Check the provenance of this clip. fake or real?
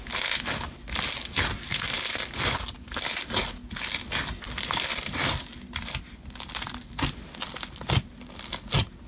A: real